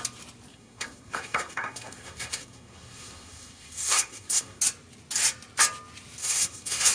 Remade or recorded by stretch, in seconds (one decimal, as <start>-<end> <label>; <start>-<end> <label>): 0.0-0.5 recorded; 0.5-4.6 remade; 4.6-6.2 recorded; 6.2-6.9 remade